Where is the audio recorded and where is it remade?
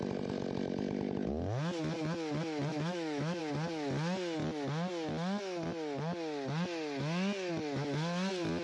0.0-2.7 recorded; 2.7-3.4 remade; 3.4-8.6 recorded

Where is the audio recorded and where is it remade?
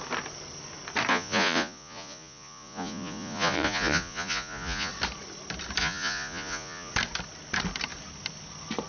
0.0-1.1 recorded; 1.1-4.9 remade; 4.9-5.8 recorded; 5.8-6.9 remade; 6.9-8.9 recorded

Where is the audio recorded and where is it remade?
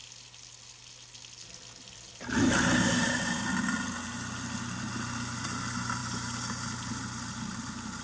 0.0-8.0 recorded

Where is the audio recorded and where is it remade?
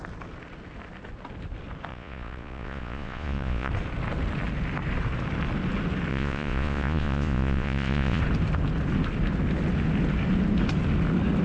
0.0-1.9 recorded; 1.9-3.7 remade; 3.7-6.1 recorded; 6.1-8.2 remade; 8.2-11.4 recorded